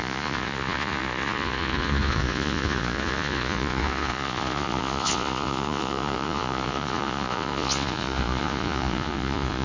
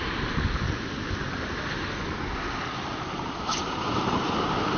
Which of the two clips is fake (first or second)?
first